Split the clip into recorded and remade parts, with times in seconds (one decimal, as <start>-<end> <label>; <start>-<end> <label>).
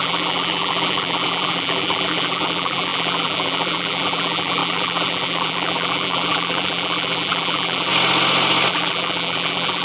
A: 0.0-7.9 remade; 7.9-8.7 recorded; 8.7-9.8 remade